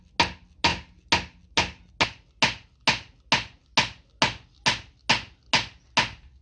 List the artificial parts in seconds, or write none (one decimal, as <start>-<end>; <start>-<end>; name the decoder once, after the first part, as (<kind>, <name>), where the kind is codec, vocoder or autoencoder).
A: none